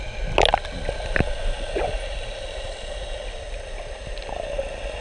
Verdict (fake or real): real